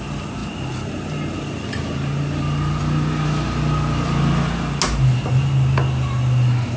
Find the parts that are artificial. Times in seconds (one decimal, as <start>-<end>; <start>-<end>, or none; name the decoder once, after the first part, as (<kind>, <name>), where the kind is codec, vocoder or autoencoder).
none